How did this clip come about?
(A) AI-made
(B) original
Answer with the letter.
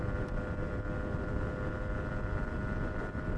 B